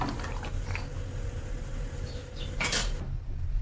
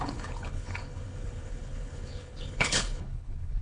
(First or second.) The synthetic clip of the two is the second